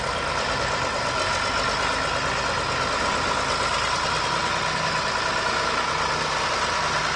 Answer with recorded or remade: recorded